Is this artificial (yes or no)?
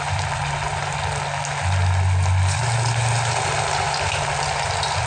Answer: no